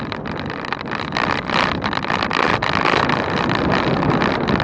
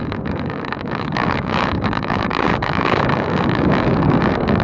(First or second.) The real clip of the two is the first